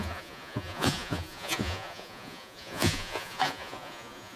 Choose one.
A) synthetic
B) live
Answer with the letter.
A